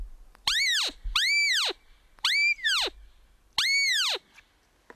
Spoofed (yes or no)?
no